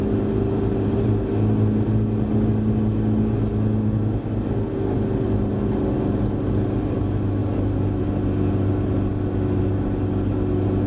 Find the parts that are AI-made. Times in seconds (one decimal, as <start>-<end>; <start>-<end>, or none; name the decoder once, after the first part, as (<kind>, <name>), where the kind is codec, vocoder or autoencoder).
none